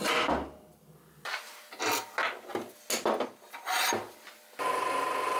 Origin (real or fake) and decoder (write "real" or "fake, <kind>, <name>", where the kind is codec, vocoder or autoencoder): real